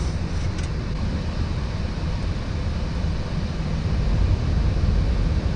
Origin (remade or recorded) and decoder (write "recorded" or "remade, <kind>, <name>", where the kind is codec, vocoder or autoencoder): recorded